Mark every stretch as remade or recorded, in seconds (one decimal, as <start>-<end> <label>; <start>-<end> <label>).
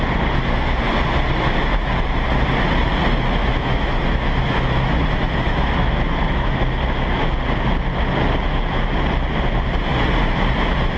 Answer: 0.0-3.4 recorded; 3.4-6.6 remade; 6.6-11.0 recorded